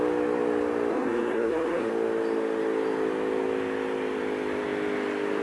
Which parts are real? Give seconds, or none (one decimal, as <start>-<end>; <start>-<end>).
0.0-0.9; 1.9-5.4